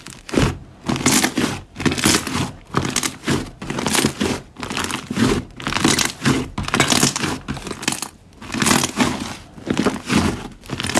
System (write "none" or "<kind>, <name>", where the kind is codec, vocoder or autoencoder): none